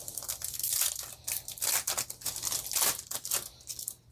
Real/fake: real